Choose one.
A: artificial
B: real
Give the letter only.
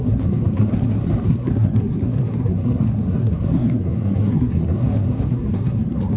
A